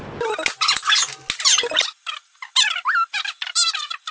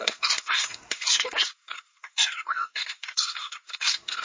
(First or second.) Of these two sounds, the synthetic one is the second